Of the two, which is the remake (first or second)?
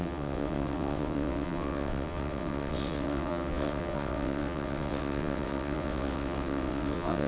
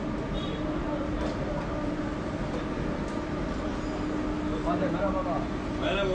first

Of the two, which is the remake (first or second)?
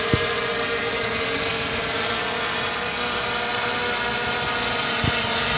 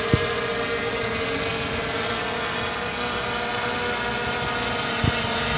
first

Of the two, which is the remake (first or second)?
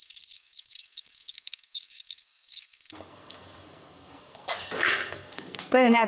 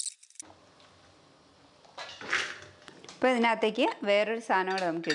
first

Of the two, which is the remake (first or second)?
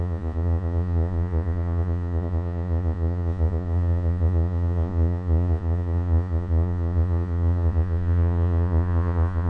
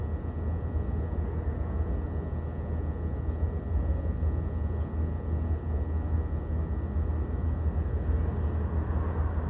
first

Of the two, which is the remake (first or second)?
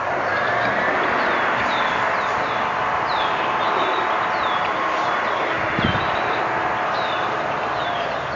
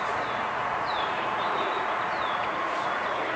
second